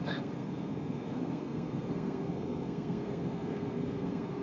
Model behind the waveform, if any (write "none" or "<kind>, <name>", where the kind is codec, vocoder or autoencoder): codec, SNAC